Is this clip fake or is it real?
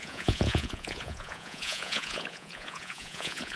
fake